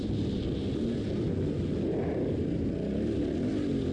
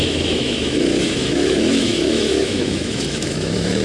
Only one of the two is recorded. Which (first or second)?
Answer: first